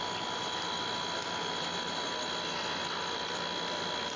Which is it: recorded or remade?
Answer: recorded